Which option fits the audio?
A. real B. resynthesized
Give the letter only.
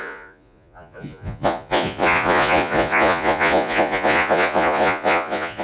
B